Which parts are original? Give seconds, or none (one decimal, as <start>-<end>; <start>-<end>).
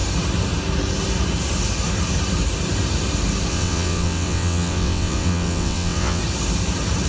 0.0-3.5; 6.2-7.1